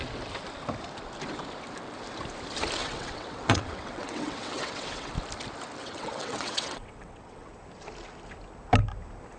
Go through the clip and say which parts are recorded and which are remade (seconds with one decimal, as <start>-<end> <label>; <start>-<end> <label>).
0.0-2.8 recorded; 2.8-5.1 remade; 5.1-5.8 recorded; 5.8-7.5 remade; 7.5-9.4 recorded